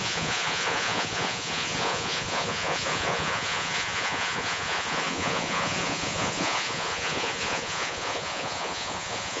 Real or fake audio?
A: fake